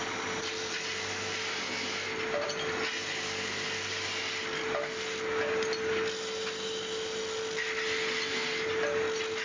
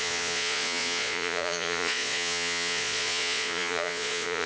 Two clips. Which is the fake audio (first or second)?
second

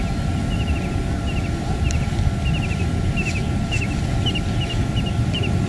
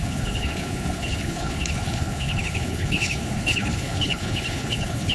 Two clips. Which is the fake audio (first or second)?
second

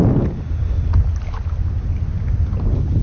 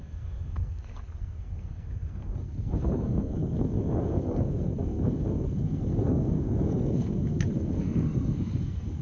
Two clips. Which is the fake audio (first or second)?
second